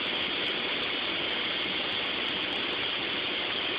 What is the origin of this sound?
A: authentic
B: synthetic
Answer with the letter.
A